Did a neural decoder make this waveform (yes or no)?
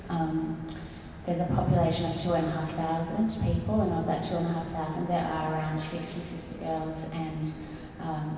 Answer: no